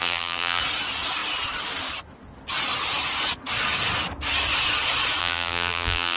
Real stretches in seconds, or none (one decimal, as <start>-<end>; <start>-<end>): 0.6-5.2